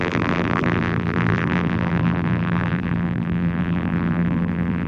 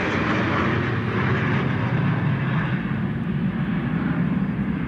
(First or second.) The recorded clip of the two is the second